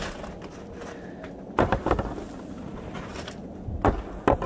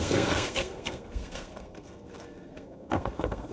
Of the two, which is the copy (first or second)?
second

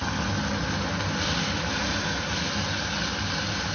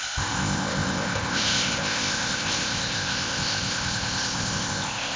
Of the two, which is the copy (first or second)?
second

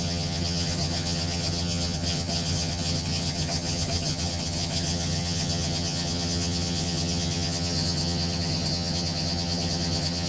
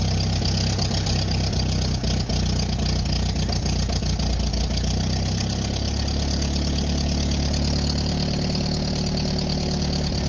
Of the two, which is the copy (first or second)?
first